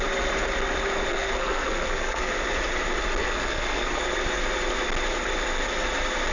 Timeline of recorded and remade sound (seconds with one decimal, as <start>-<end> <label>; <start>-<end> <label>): 0.0-1.1 recorded; 1.1-2.3 remade; 2.3-3.2 recorded; 3.2-4.0 remade; 4.0-6.3 recorded